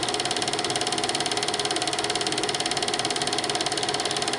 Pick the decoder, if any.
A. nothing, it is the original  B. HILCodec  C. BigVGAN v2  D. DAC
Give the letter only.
A